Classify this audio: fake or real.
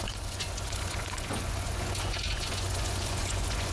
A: fake